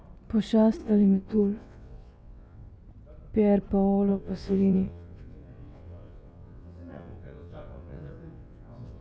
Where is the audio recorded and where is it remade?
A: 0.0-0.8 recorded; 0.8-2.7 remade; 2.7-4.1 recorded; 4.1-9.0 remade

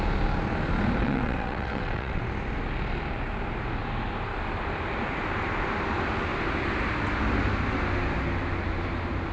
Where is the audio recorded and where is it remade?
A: 0.0-1.0 recorded; 1.0-2.2 remade; 2.2-9.3 recorded

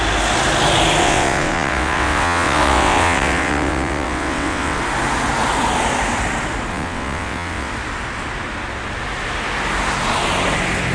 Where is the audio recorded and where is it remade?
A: 0.0-1.0 recorded; 1.0-4.8 remade; 4.8-6.7 recorded; 6.7-7.7 remade; 7.7-10.9 recorded